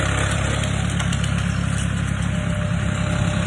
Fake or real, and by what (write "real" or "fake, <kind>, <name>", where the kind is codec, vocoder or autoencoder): real